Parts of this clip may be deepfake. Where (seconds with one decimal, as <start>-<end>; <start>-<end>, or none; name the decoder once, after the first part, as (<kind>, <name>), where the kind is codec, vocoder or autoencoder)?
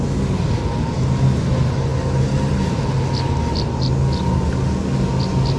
none